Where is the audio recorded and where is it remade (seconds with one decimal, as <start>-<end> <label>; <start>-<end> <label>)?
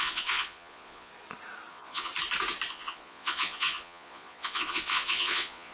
0.0-1.1 remade; 1.1-1.7 recorded; 1.7-2.1 remade; 2.1-2.7 recorded; 2.7-5.7 remade